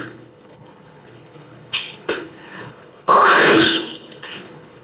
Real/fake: fake